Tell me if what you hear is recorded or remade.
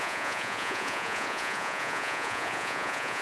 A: remade